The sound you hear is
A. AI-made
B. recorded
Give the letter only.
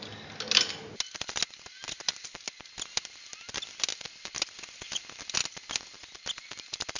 B